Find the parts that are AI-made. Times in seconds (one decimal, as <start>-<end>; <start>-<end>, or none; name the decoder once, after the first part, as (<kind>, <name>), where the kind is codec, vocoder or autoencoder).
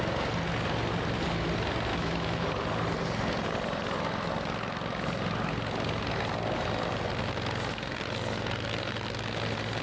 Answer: 1.9-2.5 (autoencoder, DAC-VAE)